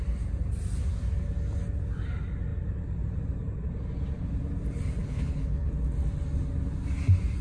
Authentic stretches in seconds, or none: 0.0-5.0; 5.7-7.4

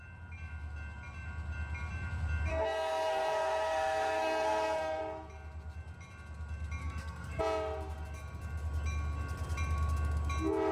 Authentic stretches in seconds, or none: 0.0-2.5; 5.0-6.8; 7.4-10.7

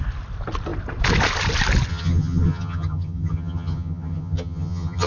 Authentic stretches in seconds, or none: 0.0-1.9